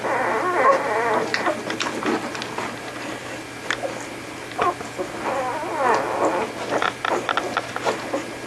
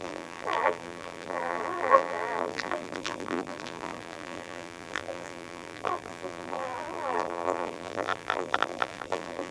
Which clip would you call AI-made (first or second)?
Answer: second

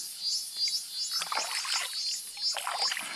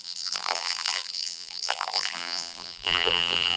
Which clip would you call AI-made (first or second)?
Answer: second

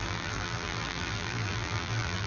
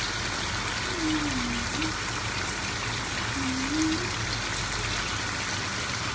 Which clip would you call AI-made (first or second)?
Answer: first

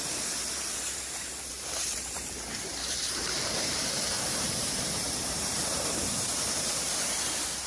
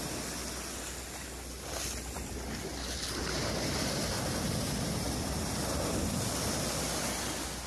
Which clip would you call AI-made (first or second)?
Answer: first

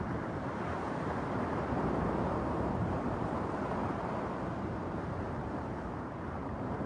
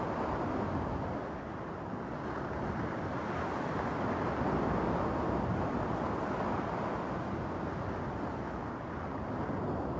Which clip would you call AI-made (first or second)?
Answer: first